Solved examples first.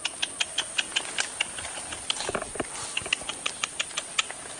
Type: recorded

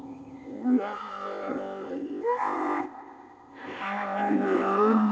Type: remade